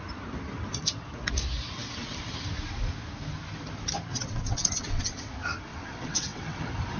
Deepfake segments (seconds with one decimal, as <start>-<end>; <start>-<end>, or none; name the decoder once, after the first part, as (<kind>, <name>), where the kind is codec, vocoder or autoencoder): 4.1-5.3 (vocoder, WaveNeXt); 5.7-6.6